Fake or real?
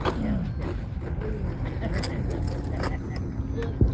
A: real